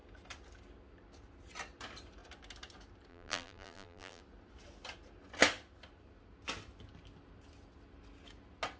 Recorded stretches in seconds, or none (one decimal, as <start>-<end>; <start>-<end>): 0.0-3.1; 4.2-8.8